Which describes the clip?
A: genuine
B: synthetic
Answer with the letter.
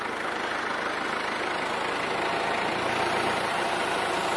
A